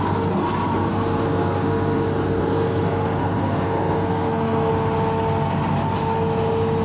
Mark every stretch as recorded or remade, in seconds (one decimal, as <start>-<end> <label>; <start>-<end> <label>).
0.0-0.9 recorded; 0.9-4.7 remade; 4.7-6.8 recorded